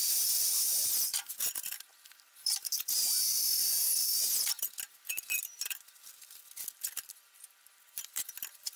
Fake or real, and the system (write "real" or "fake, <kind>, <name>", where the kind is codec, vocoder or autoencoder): fake, vocoder, BigVGAN v2